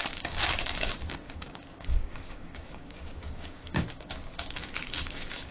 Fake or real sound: fake